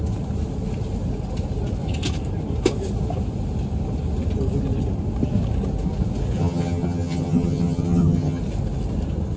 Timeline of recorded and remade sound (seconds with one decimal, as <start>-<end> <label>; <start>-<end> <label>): 0.0-6.4 recorded; 6.4-8.4 remade; 8.4-9.4 recorded